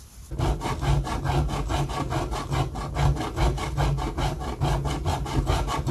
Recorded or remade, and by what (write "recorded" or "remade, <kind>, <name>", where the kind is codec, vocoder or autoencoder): recorded